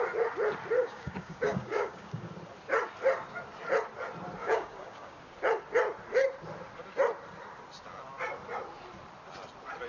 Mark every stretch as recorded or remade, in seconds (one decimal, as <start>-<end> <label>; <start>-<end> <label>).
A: 0.0-0.8 recorded; 0.8-2.3 remade; 2.3-4.4 recorded; 4.4-5.2 remade; 5.2-9.9 recorded